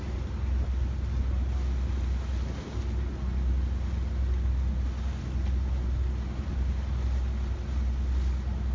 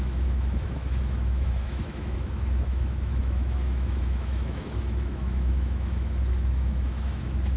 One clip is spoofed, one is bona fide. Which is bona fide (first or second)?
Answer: first